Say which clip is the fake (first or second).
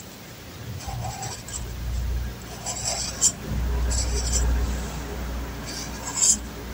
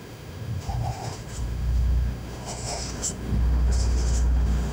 second